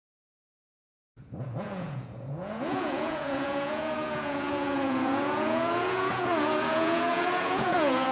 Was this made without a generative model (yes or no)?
no